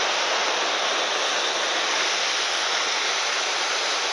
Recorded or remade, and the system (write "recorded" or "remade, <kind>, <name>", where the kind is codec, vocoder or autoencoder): recorded